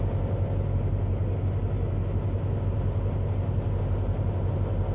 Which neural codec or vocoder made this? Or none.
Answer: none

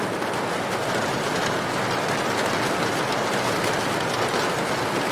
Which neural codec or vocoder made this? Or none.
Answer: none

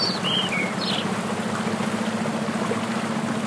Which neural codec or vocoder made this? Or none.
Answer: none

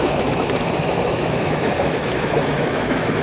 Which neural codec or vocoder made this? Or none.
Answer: autoencoder, DAC-VAE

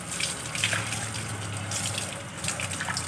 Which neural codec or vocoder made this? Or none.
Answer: none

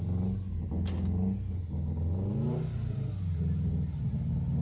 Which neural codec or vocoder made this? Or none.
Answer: none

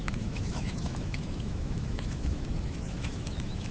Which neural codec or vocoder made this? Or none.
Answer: autoencoder, DAC-VAE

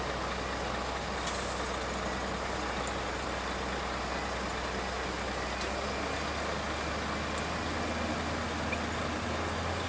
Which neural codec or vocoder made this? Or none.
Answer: none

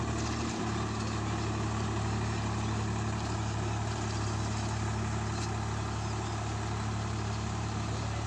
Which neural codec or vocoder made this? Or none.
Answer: none